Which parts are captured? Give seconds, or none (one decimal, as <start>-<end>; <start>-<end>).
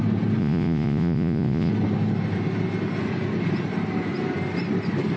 0.0-0.4; 1.7-5.2